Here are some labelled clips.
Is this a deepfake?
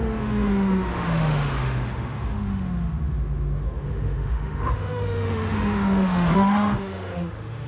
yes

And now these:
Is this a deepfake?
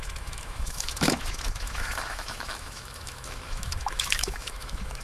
yes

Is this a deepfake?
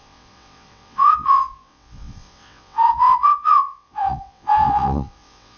yes